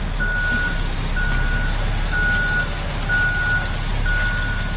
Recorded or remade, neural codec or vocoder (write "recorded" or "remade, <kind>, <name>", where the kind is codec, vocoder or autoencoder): recorded